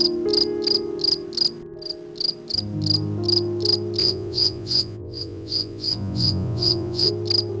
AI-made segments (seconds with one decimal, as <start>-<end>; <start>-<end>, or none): 4.0-7.1